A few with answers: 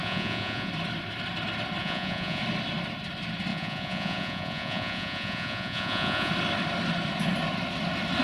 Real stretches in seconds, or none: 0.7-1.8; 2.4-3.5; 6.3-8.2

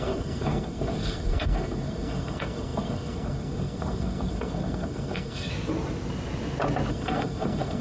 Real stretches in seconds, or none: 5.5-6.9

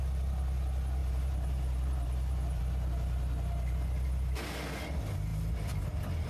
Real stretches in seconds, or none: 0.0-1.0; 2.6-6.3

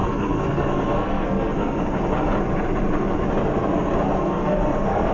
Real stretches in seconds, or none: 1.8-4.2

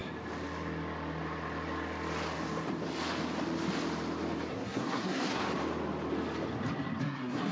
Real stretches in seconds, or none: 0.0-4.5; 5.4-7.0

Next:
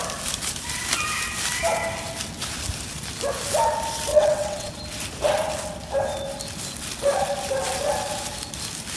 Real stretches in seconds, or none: 0.0-4.1; 4.7-9.0